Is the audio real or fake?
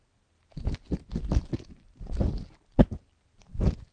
real